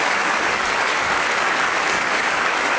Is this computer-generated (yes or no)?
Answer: yes